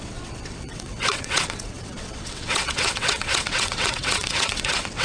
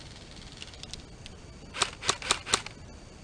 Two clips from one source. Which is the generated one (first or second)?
first